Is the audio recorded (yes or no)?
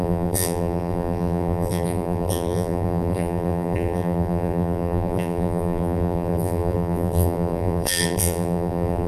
no